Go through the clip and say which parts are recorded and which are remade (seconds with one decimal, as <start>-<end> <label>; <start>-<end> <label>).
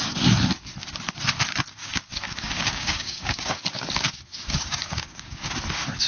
0.0-1.8 recorded; 1.8-5.5 remade; 5.5-6.1 recorded